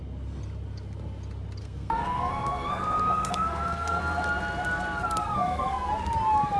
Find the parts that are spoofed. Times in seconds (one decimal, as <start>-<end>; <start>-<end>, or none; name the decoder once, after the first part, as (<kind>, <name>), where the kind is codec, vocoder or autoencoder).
1.6-4.0 (codec, SNAC); 5.2-5.9